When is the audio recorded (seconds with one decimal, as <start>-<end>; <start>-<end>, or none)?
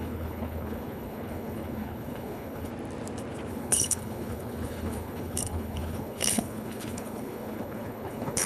2.7-3.5